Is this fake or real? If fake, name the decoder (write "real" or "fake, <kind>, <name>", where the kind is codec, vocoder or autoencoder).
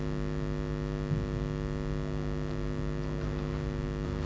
real